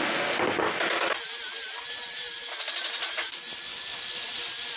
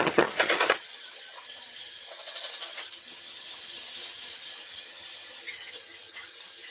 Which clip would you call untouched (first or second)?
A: first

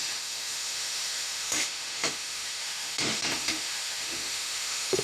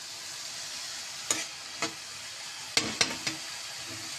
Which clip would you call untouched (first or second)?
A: second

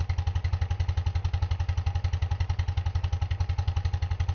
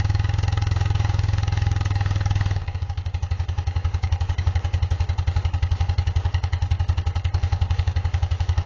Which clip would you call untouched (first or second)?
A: first